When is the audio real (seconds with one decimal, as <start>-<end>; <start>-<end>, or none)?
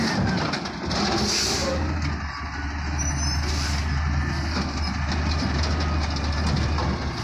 0.0-7.2